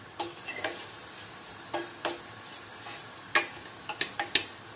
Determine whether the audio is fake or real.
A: real